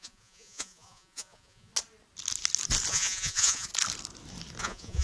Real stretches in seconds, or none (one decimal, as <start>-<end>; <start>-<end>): 1.7-2.9; 3.7-4.6